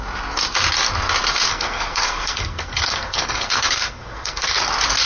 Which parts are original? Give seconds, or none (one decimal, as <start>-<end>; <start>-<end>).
0.0-1.5; 4.6-5.1